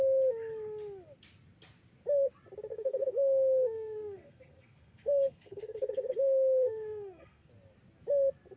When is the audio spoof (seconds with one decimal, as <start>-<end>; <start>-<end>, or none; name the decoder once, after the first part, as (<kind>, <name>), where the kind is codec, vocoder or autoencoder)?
2.7-7.5 (codec, SNAC)